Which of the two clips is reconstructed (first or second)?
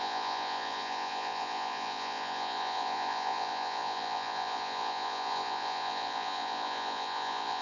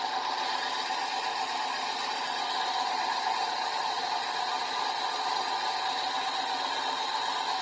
first